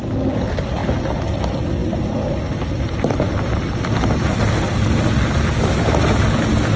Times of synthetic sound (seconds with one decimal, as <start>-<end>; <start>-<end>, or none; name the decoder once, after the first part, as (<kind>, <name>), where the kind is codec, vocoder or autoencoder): 0.8-1.4 (vocoder, BigVGAN v2)